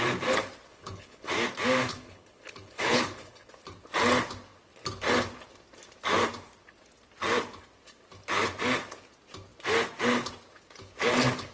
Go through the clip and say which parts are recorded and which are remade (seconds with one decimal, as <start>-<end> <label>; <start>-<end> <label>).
0.0-0.7 recorded; 0.7-1.3 remade; 1.3-1.9 recorded; 1.9-3.5 remade; 3.5-11.5 recorded